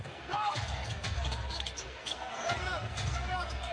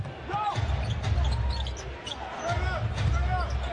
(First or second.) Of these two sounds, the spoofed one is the first